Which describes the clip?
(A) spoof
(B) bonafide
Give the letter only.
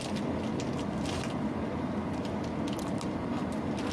B